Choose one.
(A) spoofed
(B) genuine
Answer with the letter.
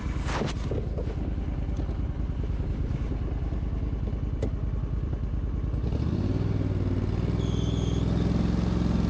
B